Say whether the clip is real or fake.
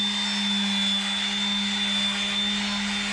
real